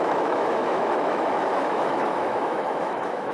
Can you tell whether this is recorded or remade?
remade